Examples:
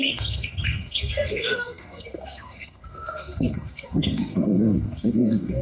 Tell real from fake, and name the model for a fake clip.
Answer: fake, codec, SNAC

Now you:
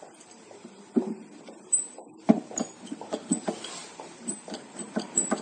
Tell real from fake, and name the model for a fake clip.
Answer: fake, vocoder, BigVGAN v2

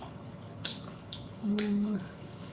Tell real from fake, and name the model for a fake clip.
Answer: fake, codec, HILCodec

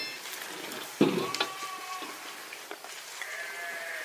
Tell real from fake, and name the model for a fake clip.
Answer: real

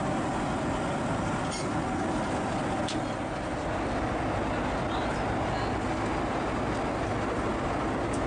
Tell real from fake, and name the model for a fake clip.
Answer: real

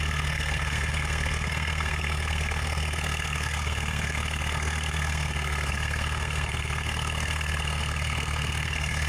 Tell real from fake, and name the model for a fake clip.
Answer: fake, codec, SNAC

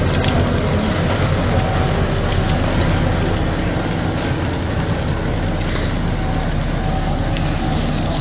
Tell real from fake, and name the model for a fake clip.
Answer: real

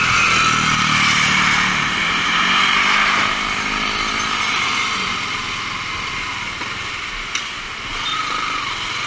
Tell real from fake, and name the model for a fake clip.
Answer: real